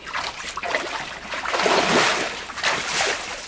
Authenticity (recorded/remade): recorded